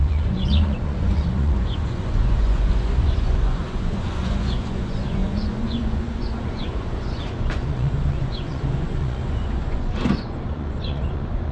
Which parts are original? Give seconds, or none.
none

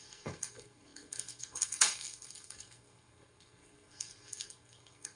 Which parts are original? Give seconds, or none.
none

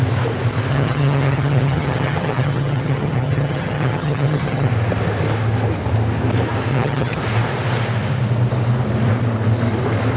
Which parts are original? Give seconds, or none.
0.0-0.7; 4.7-6.7; 7.2-10.2

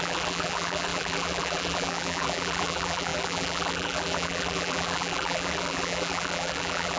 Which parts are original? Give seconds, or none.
none

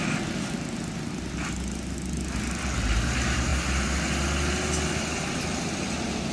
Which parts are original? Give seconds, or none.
0.0-6.3

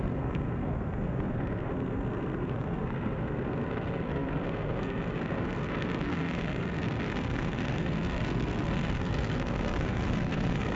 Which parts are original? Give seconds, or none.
none

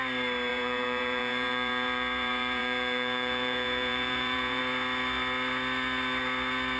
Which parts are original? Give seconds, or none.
0.0-0.5; 4.6-6.8